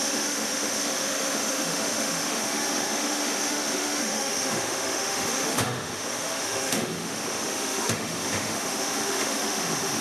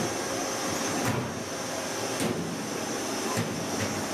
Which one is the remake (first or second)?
first